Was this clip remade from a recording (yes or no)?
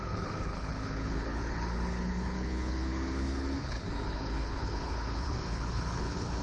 yes